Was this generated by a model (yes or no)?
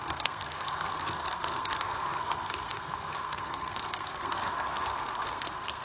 yes